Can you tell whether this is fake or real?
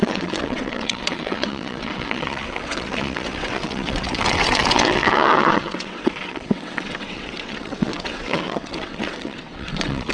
fake